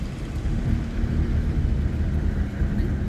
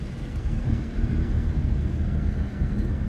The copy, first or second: second